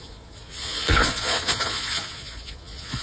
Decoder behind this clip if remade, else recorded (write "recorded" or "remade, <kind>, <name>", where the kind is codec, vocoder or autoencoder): remade, vocoder, Vocos